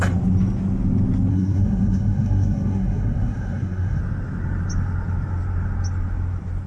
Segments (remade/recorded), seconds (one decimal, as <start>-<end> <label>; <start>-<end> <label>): 0.0-1.3 recorded; 1.3-4.0 remade; 4.0-6.7 recorded